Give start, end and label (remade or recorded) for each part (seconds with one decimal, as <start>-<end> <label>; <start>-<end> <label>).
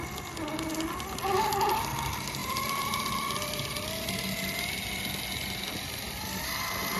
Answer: 0.0-7.0 recorded